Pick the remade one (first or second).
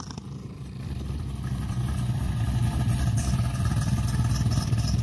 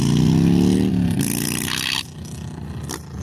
first